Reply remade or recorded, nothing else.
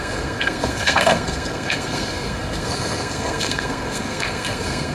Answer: remade